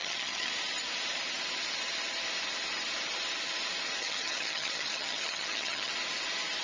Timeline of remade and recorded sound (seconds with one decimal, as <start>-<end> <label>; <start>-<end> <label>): 0.0-0.5 remade; 0.5-4.0 recorded; 4.0-5.9 remade; 5.9-6.6 recorded